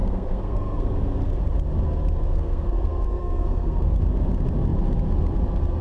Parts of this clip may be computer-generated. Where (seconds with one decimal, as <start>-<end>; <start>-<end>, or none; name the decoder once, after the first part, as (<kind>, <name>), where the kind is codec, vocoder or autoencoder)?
0.0-1.4 (codec, SNAC); 2.3-4.0